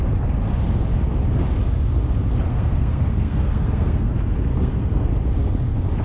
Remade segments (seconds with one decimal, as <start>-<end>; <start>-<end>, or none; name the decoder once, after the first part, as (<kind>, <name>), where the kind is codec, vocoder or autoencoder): 2.5-4.1 (codec, SNAC); 4.5-5.1